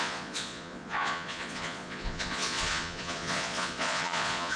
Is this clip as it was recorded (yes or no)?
no